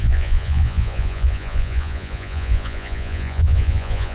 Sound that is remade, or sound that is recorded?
remade